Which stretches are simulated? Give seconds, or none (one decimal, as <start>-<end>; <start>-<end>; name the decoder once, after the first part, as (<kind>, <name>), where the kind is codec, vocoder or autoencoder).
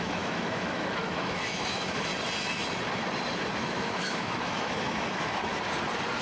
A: 0.0-2.1 (autoencoder, DAC-VAE); 3.6-5.5